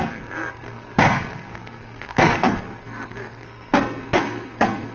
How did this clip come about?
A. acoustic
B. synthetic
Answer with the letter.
B